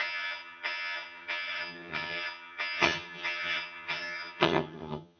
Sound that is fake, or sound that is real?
fake